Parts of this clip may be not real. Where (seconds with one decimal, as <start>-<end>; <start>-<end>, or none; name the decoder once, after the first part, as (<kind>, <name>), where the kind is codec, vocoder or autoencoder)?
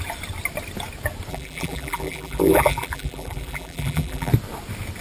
1.3-4.3 (vocoder, BigVGAN v2)